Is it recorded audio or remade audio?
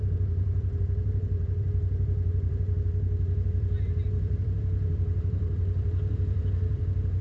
remade